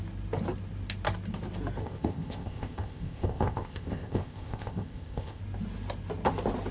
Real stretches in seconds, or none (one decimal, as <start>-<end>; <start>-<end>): 0.0-1.8; 5.4-6.7